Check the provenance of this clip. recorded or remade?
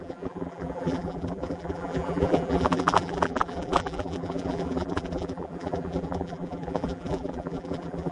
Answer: remade